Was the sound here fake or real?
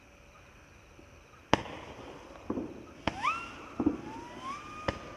real